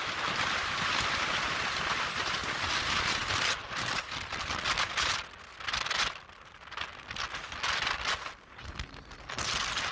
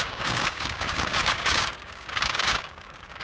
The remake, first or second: second